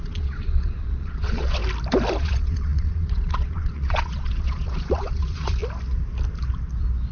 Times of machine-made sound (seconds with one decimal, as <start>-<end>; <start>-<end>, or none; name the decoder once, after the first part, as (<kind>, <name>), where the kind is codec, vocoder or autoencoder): 0.0-1.6 (vocoder, Vocos); 2.2-5.6